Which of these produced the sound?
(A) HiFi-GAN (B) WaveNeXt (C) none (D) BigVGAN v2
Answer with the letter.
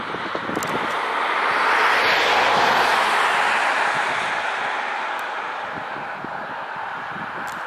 C